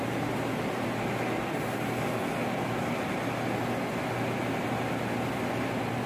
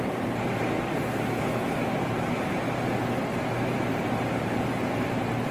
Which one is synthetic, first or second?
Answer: second